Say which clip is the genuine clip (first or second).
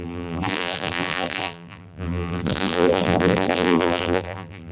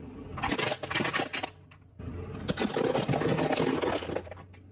second